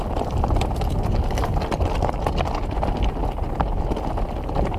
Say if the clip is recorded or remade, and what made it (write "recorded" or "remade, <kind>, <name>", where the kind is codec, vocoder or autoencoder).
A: recorded